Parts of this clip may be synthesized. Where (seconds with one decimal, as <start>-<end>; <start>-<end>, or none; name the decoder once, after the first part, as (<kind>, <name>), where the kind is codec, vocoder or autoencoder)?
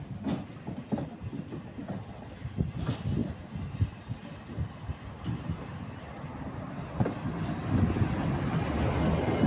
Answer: none